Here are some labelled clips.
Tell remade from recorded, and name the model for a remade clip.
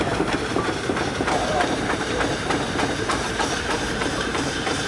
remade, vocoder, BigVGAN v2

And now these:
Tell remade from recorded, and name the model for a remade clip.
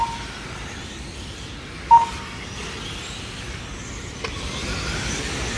recorded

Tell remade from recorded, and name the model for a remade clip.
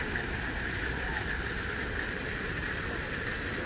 recorded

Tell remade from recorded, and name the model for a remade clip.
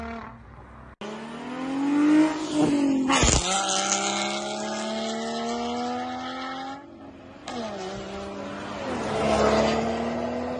recorded